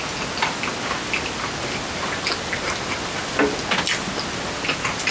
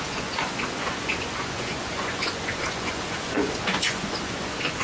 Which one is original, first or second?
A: first